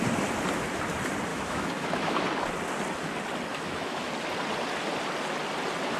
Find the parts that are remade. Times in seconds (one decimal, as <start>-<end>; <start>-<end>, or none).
1.3-2.2; 3.5-4.1